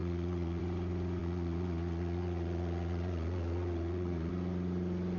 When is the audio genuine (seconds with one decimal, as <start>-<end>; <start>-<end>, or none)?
0.6-1.2; 4.3-5.2